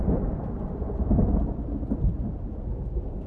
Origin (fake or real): real